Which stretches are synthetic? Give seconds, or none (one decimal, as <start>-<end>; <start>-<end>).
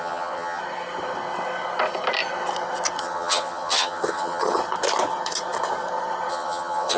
0.0-0.6; 3.0-4.6; 6.3-7.0